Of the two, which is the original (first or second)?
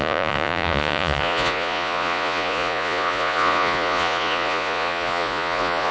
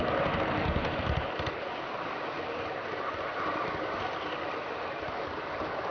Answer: second